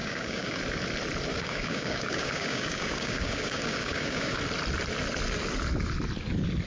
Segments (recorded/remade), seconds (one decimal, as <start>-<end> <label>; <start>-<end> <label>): 0.0-0.6 remade; 0.6-1.3 recorded; 1.3-4.4 remade; 4.4-6.7 recorded